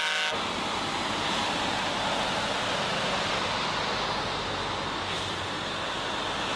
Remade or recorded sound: recorded